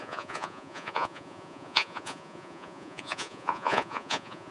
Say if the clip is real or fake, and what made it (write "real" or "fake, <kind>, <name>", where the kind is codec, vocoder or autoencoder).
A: fake, vocoder, Vocos